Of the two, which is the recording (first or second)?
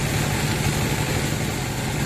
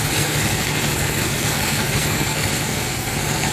first